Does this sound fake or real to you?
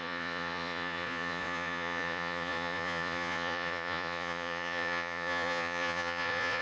fake